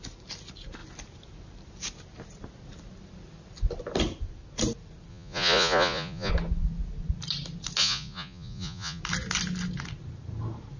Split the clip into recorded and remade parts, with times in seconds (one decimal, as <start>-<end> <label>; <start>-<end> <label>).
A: 0.0-5.1 recorded; 5.1-6.3 remade; 6.3-7.8 recorded; 7.8-9.0 remade; 9.0-10.8 recorded